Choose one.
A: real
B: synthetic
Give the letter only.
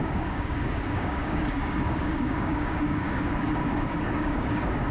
B